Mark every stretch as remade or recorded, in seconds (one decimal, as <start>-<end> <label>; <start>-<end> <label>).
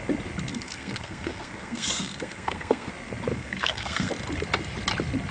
0.0-0.5 recorded; 0.5-2.9 remade; 2.9-3.3 recorded; 3.3-4.1 remade; 4.1-5.3 recorded